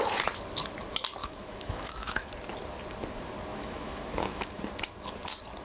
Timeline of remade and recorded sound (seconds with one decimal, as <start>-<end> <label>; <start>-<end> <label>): 0.0-1.2 recorded; 1.2-2.3 remade; 2.3-3.5 recorded; 3.5-4.6 remade; 4.6-5.6 recorded